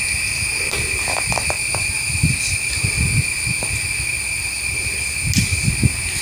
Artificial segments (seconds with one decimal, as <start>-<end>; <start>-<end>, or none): none